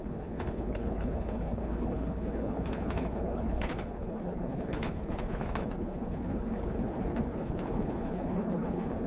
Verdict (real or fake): fake